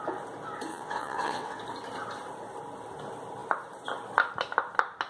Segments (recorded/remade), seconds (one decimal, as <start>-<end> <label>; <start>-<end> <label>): 0.0-0.7 recorded; 0.7-1.6 remade; 1.6-5.1 recorded